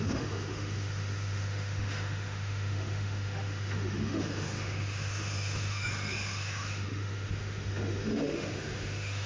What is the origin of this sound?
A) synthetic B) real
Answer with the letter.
A